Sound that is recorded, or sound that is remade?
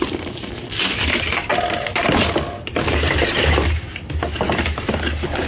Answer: recorded